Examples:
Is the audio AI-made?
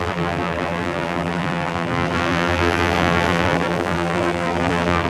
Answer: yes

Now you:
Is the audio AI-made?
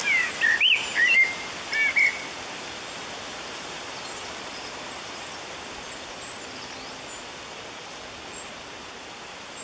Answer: no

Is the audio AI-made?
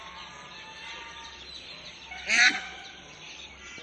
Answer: no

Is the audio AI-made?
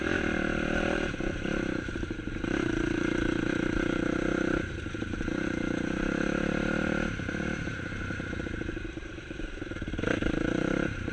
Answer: yes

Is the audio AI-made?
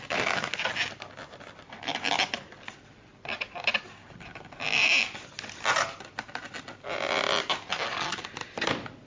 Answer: no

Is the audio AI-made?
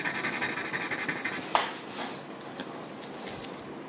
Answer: no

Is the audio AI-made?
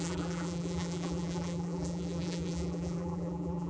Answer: yes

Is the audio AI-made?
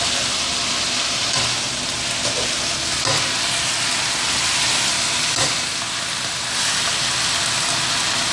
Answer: no